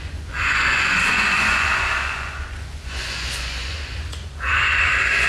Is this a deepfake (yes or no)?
yes